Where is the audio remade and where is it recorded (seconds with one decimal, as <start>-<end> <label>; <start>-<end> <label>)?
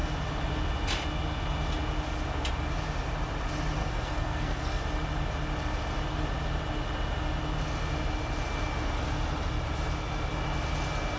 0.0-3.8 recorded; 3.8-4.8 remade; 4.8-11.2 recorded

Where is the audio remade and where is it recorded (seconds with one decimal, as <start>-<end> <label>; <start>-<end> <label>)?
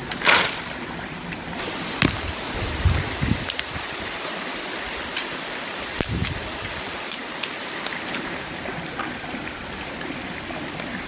0.0-5.2 recorded; 5.2-7.2 remade; 7.2-10.1 recorded; 10.1-11.1 remade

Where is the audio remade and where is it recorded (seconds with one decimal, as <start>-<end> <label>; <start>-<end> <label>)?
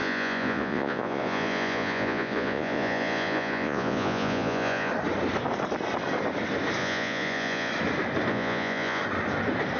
0.0-4.9 remade; 4.9-6.8 recorded; 6.8-7.7 remade; 7.7-8.3 recorded; 8.3-9.0 remade; 9.0-9.8 recorded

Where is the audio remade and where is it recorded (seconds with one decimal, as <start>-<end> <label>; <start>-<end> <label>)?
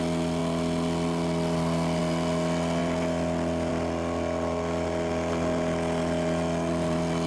0.0-7.3 recorded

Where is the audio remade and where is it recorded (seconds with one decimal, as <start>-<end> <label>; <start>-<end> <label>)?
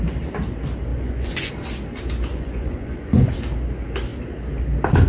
0.0-0.9 recorded; 0.9-1.5 remade; 1.5-2.3 recorded; 2.3-3.3 remade; 3.3-5.1 recorded